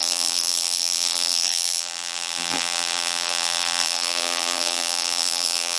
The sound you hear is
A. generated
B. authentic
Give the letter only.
A